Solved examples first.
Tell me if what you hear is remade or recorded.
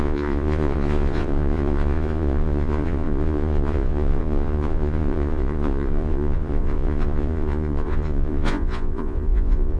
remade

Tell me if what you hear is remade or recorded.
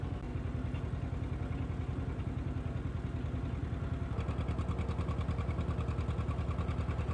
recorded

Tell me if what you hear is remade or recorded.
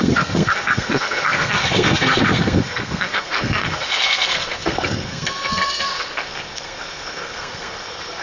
remade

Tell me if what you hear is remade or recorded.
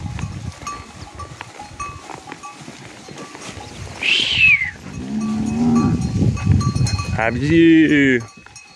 recorded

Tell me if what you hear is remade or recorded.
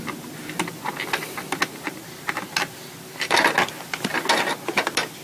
recorded